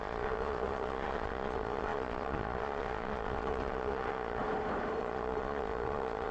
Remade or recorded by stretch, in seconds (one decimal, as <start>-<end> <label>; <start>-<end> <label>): 0.0-4.4 remade; 4.4-5.0 recorded; 5.0-6.3 remade